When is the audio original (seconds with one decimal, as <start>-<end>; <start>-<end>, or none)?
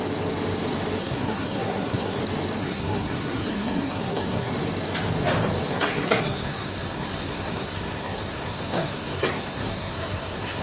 0.0-1.0; 2.2-2.6; 4.5-5.7